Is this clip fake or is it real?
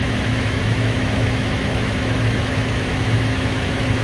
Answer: fake